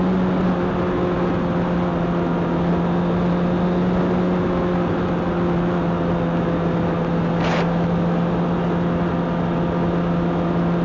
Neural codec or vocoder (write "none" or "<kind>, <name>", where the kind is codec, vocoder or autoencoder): none